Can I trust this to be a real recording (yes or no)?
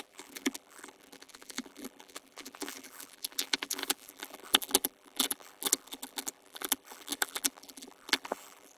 no